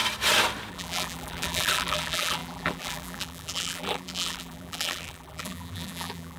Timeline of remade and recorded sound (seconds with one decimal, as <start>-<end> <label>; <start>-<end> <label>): 0.0-0.7 recorded; 0.7-6.4 remade